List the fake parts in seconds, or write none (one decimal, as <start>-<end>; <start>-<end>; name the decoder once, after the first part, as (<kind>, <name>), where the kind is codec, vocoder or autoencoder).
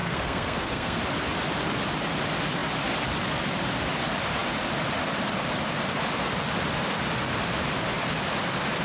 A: 0.0-1.0 (codec, SNAC)